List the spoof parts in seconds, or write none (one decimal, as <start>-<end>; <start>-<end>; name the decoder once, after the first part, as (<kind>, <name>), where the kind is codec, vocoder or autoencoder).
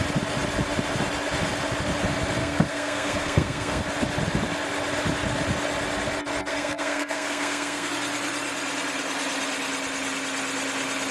2.4-3.8 (codec, SNAC); 6.5-7.9